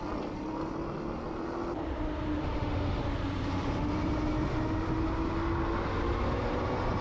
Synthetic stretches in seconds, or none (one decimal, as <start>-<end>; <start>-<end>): 2.4-3.0